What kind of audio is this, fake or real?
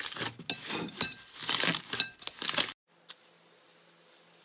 real